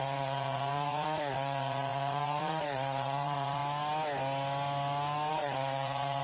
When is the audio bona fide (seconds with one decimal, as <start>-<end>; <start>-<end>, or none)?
3.6-5.3